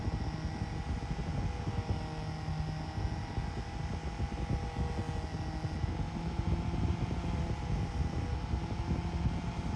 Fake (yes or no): no